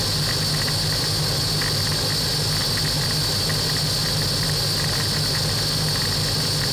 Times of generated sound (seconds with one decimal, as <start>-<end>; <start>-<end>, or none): none